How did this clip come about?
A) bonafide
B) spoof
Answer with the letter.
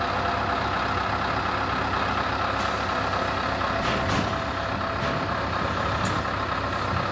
A